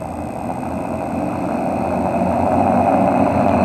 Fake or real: real